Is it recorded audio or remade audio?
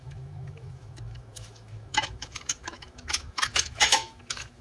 remade